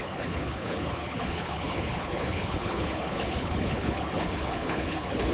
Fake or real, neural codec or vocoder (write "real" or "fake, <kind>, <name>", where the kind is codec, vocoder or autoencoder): fake, codec, HILCodec